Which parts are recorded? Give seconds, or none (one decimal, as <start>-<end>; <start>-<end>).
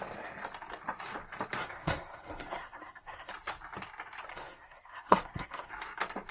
0.0-1.6; 3.3-4.3; 5.7-6.3